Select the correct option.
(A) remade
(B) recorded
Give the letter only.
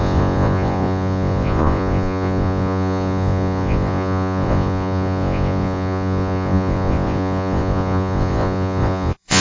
A